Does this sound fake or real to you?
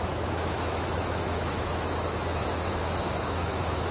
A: fake